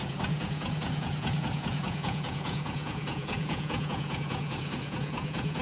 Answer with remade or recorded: remade